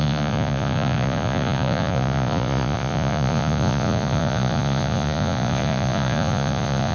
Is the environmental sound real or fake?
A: fake